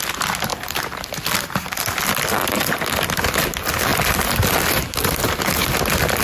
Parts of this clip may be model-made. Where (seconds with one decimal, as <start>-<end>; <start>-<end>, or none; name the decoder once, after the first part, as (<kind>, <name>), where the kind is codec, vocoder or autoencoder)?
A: none